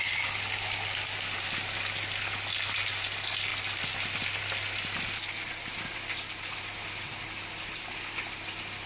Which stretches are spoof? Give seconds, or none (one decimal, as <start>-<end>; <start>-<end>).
none